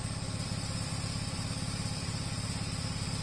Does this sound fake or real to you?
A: fake